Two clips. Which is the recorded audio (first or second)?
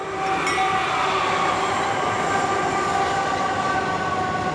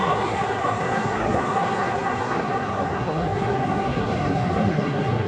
first